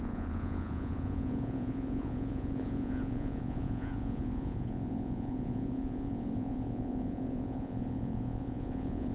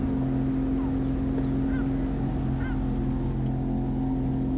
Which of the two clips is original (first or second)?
second